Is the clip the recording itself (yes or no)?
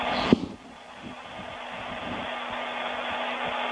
yes